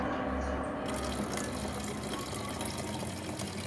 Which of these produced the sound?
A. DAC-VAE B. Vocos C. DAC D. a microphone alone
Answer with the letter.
D